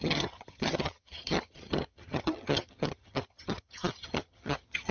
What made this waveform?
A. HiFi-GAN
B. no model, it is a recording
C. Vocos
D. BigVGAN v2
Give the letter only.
A